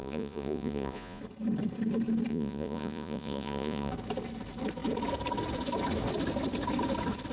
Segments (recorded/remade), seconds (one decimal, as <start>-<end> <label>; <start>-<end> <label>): 0.0-1.2 remade; 1.2-2.3 recorded; 2.3-3.9 remade; 3.9-7.3 recorded